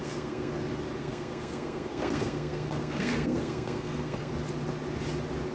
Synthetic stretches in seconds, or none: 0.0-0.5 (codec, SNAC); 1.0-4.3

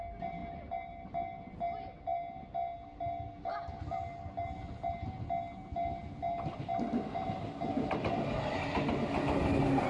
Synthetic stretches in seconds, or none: 0.4-1.1 (vocoder, BigVGAN v2)

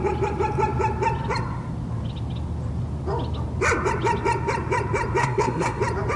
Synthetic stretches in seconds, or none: 5.2-5.8 (codec, SNAC)

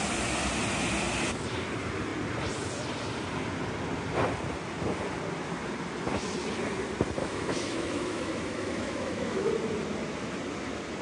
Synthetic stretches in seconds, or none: 7.2-9.5 (autoencoder, DAC-VAE)